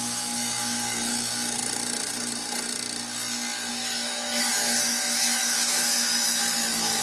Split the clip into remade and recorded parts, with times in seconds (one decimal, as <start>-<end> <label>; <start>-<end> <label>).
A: 0.0-1.6 remade; 1.6-3.7 recorded; 3.7-7.0 remade